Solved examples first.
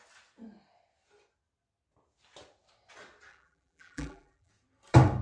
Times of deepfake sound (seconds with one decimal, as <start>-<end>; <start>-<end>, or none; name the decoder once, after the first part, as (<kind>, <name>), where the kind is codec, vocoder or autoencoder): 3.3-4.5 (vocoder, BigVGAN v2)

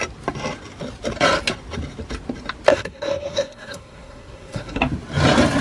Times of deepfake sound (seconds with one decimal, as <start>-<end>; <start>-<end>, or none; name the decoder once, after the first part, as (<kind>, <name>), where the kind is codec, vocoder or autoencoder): 2.7-4.8 (codec, SNAC)

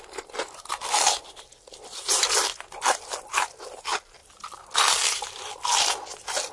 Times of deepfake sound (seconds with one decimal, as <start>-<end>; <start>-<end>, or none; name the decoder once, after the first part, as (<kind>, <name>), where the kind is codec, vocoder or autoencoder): 4.2-5.2 (vocoder, BigVGAN v2)

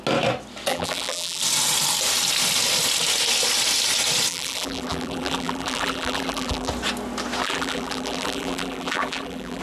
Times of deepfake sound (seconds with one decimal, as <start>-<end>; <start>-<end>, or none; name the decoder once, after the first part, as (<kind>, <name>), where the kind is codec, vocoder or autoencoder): 0.7-1.4 (vocoder, BigVGAN v2); 4.3-6.7; 7.4-9.6

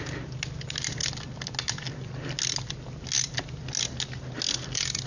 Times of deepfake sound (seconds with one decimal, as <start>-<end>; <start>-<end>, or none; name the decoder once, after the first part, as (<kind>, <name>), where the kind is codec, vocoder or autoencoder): none

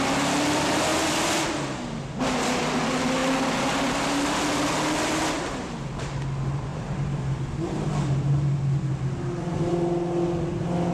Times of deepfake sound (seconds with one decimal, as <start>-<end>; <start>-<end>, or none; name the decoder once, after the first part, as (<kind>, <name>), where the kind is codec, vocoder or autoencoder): none

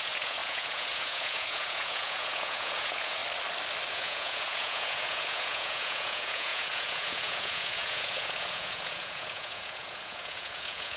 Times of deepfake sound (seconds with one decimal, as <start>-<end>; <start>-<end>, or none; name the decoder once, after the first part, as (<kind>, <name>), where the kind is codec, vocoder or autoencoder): 0.0-3.2 (vocoder, Vocos); 3.9-11.0